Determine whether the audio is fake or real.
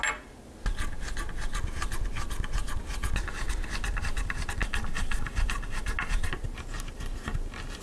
real